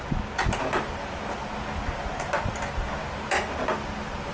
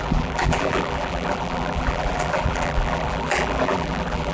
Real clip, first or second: first